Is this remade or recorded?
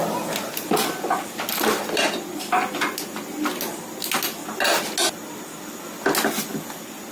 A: recorded